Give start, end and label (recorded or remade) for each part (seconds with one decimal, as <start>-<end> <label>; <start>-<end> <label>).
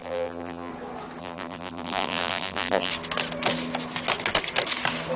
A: 0.0-0.7 remade; 0.7-1.2 recorded; 1.2-2.9 remade; 2.9-5.2 recorded